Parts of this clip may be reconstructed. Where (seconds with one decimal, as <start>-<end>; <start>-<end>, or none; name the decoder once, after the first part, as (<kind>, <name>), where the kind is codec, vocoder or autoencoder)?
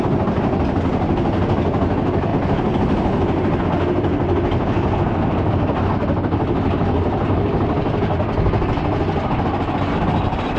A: none